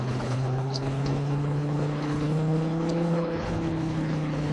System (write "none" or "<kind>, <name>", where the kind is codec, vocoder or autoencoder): codec, HILCodec